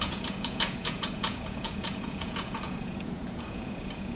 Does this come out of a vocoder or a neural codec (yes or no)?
yes